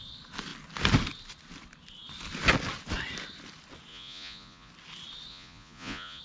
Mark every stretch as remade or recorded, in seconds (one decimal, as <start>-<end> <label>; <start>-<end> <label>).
0.0-3.9 recorded; 3.9-4.7 remade; 4.7-5.3 recorded; 5.3-6.2 remade